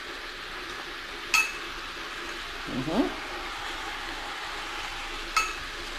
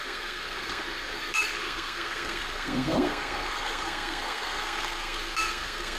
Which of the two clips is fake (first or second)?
second